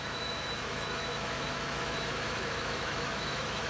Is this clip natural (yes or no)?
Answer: no